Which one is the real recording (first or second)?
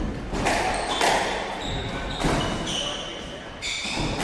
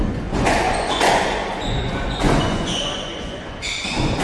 first